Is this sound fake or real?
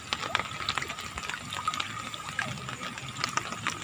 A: real